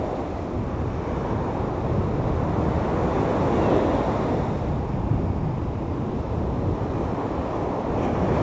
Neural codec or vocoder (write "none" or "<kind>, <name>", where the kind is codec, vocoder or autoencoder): none